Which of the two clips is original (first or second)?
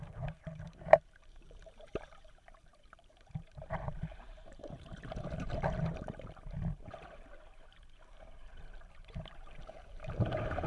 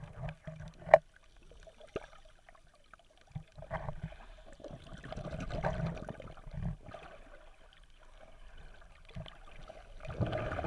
second